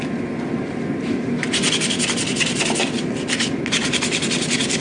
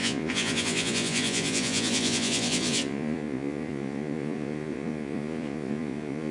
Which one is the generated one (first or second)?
second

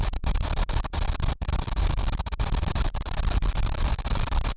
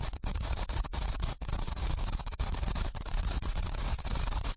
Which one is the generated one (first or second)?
second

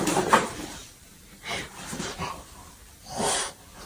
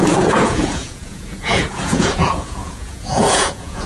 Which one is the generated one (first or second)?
second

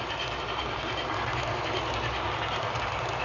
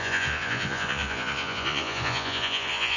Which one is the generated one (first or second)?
second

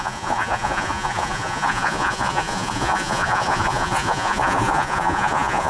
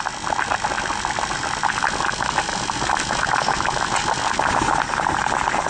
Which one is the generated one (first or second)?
first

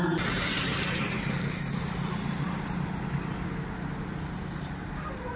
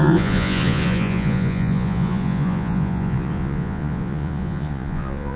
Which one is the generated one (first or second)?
second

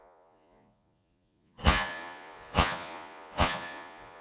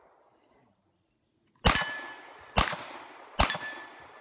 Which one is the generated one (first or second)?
first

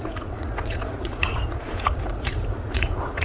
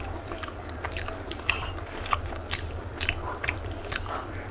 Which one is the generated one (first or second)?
first